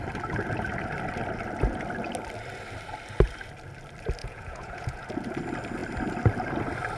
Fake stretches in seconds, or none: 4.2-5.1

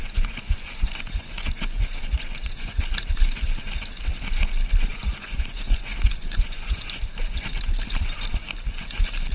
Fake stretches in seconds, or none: 0.0-2.8; 4.9-7.0